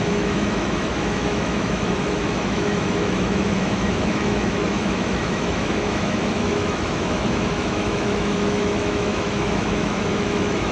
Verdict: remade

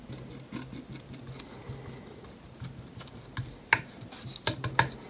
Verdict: recorded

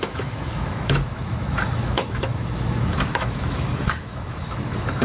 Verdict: remade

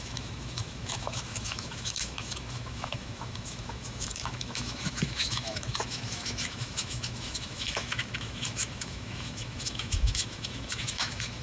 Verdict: remade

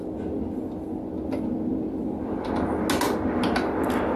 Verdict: recorded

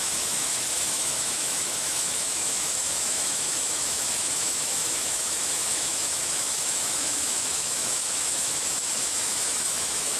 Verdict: remade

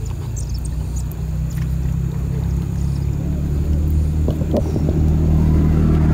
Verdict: recorded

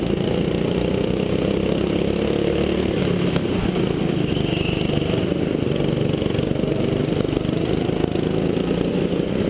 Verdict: recorded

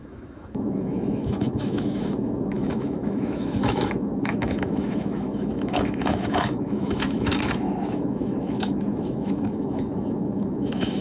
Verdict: remade